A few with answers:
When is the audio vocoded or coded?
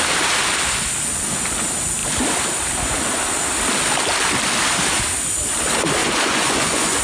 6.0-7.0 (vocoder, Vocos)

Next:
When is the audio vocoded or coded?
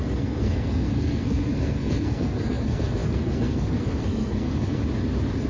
0.0-4.8 (codec, SNAC)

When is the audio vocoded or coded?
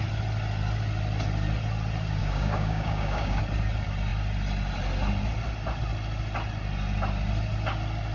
2.2-3.4 (codec, DAC)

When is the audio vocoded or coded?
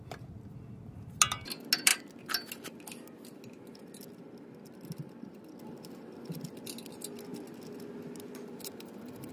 none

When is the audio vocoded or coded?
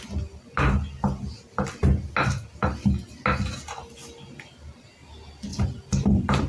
none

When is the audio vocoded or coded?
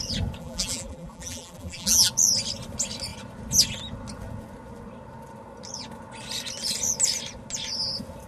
0.4-2.1 (vocoder, BigVGAN v2)